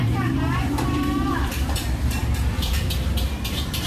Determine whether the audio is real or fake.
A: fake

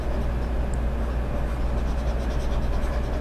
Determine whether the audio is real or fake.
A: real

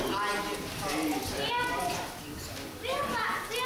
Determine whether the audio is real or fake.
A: real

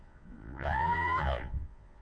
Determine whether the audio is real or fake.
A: fake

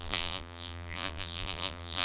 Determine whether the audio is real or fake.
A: fake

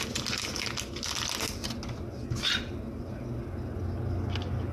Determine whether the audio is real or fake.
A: real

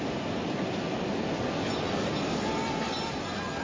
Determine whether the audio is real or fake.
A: real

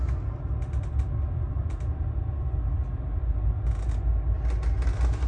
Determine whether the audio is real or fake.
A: real